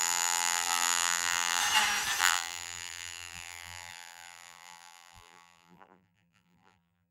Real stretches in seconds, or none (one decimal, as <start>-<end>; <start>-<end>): 1.6-2.2